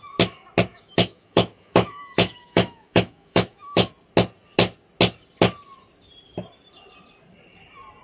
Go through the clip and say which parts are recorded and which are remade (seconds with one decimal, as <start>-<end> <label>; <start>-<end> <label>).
0.0-0.7 recorded; 0.7-3.9 remade; 3.9-8.0 recorded